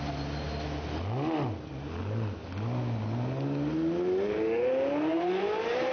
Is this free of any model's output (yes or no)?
yes